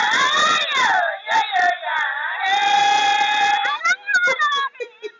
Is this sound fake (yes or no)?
no